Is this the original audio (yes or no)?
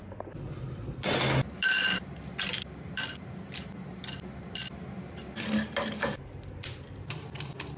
yes